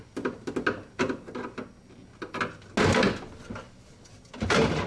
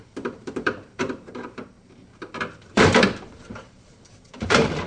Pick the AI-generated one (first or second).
second